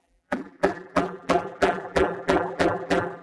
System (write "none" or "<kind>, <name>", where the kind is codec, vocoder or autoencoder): vocoder, BigVGAN v2